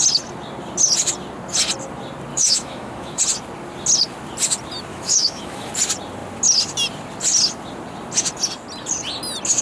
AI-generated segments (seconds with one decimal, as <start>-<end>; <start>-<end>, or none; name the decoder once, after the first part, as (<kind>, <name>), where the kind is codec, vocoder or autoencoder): 2.3-3.2 (autoencoder, DAC-VAE); 4.9-5.7